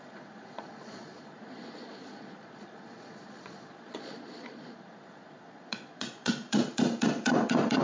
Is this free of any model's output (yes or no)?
no